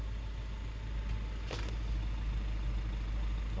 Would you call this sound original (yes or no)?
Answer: yes